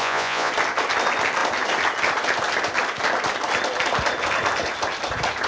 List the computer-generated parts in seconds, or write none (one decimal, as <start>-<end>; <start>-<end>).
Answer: 0.0-0.5